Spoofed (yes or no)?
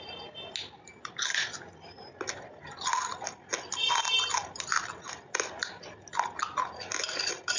no